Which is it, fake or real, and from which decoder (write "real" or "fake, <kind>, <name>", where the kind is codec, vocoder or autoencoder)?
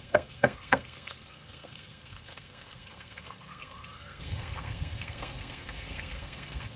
fake, codec, SNAC